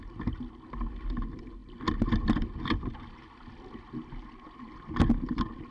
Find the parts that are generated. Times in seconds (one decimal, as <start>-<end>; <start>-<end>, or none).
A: none